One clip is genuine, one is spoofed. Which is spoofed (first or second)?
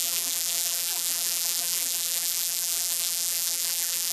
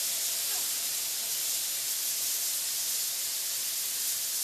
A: first